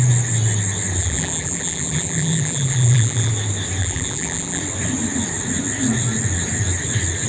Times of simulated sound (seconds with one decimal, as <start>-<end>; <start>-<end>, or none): 1.0-3.3; 3.8-4.6